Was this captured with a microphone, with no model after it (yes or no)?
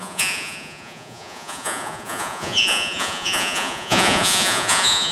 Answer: no